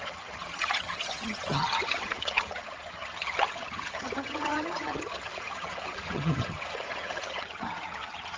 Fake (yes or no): yes